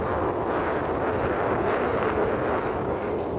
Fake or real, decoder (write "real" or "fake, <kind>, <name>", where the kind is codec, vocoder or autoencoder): real